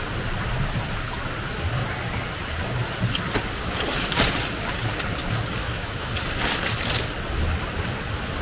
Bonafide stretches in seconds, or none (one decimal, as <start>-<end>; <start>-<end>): 0.0-5.6; 6.1-8.4